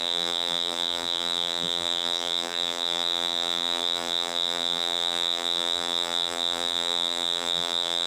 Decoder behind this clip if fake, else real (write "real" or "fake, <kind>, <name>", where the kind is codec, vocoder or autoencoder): fake, vocoder, BigVGAN v2